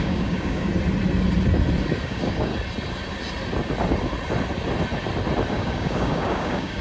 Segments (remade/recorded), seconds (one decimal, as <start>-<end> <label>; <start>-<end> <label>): 0.0-0.7 remade; 0.7-2.0 recorded; 2.0-2.5 remade; 2.5-5.5 recorded; 5.5-6.8 remade